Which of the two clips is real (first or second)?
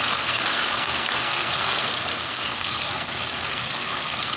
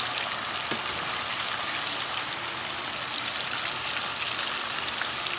second